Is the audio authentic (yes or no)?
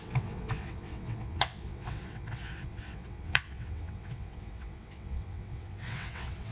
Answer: no